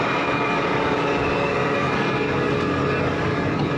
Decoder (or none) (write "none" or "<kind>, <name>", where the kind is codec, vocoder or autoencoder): codec, DAC